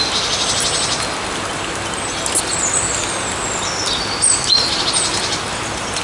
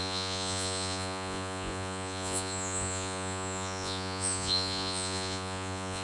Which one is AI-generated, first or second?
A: second